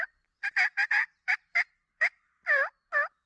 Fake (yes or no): no